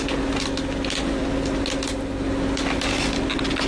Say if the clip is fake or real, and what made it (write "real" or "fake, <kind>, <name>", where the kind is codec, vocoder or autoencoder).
real